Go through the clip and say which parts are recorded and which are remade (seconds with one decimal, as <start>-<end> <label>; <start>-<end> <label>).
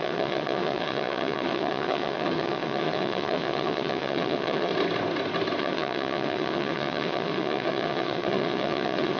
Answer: 0.0-4.7 remade; 4.7-5.6 recorded; 5.6-9.2 remade